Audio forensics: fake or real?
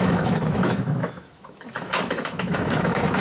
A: fake